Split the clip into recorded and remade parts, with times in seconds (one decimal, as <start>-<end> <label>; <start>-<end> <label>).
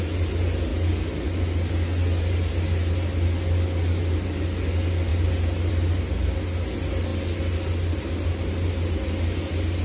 0.0-9.8 recorded